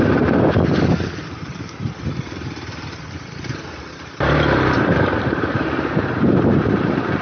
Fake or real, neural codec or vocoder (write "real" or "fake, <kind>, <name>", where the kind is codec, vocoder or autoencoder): fake, vocoder, BigVGAN v2